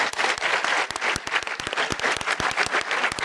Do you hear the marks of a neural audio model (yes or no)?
no